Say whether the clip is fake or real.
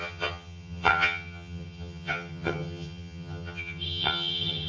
fake